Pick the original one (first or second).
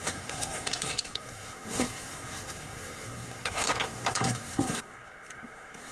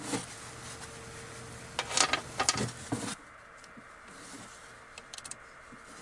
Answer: second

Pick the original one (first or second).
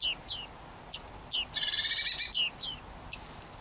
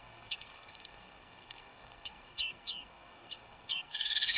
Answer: first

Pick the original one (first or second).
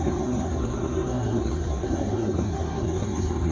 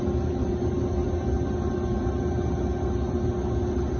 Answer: second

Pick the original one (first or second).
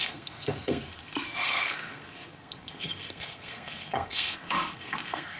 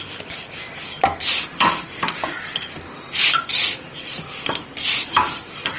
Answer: second